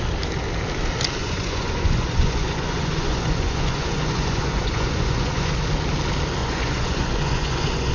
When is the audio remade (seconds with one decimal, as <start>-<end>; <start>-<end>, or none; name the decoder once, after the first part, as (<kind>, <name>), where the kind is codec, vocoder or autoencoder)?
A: 1.2-5.5 (vocoder, Vocos); 6.4-7.9